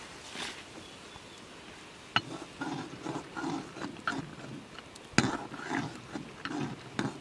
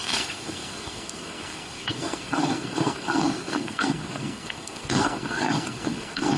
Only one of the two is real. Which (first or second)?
first